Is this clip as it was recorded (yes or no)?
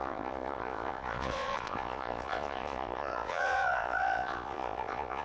no